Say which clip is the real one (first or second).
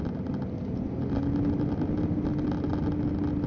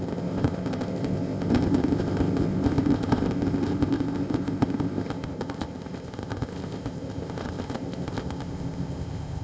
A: first